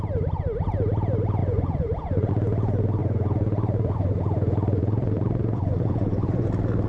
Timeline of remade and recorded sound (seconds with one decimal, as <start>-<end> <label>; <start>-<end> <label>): 0.0-1.4 recorded; 1.4-2.3 remade; 2.3-3.0 recorded; 3.0-6.5 remade; 6.5-6.9 recorded